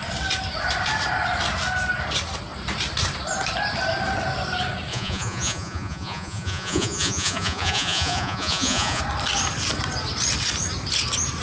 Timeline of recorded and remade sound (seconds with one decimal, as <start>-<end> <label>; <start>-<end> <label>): 0.0-4.9 recorded; 4.9-9.0 remade; 9.0-11.4 recorded